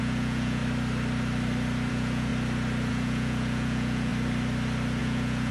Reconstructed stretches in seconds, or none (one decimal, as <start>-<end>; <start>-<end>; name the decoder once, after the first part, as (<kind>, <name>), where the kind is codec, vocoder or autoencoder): 0.0-0.6 (vocoder, Vocos); 1.9-2.3; 2.9-4.1; 5.0-5.5